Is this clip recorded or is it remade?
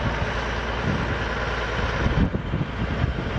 recorded